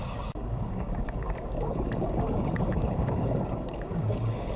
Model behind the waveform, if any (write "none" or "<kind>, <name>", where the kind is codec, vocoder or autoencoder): codec, DAC